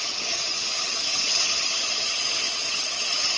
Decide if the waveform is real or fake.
fake